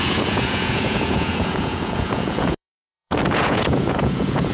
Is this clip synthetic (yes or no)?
yes